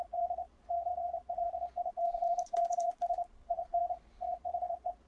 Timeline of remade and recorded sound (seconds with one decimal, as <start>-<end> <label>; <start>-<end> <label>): 0.0-5.1 remade